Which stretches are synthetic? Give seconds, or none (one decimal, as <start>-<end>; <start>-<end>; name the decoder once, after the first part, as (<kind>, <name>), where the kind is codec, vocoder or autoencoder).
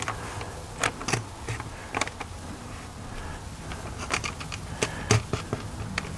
1.8-2.9 (vocoder, BigVGAN v2)